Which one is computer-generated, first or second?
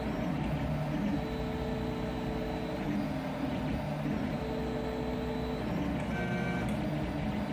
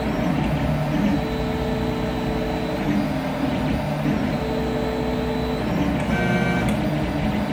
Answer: first